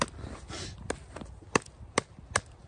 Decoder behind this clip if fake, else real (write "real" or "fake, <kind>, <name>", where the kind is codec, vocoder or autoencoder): real